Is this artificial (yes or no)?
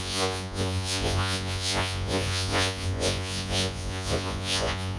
yes